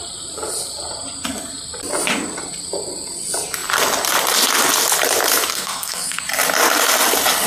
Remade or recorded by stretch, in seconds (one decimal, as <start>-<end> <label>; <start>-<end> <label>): 0.0-5.5 recorded; 5.5-6.2 remade; 6.2-7.5 recorded